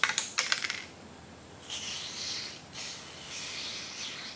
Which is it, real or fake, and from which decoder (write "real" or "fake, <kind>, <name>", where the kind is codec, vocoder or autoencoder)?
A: fake, vocoder, BigVGAN v2